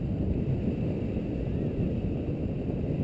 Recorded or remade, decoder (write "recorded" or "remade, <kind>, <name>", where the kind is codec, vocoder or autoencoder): recorded